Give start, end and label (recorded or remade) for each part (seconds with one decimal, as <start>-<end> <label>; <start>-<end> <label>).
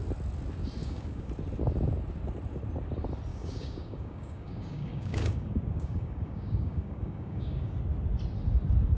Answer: 0.0-0.8 recorded; 0.8-1.3 remade; 1.3-3.3 recorded; 3.3-7.8 remade; 7.8-9.0 recorded